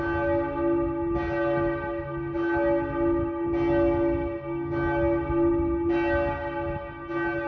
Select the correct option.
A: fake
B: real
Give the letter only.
B